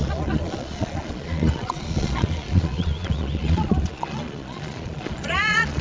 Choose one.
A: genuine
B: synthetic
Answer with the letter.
B